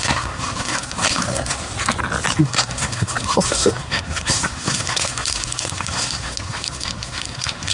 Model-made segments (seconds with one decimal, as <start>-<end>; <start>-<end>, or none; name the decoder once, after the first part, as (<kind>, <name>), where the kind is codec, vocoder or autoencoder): 0.0-1.7 (codec, SNAC); 2.4-7.7